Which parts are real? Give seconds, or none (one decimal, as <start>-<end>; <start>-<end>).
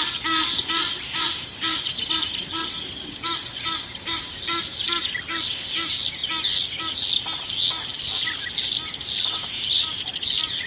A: 0.0-10.7